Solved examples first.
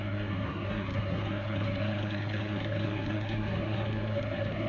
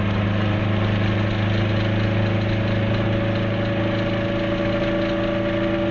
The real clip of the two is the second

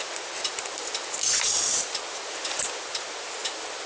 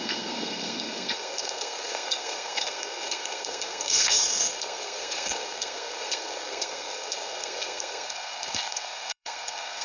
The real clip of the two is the first